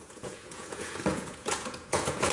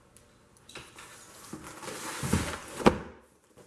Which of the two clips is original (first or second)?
second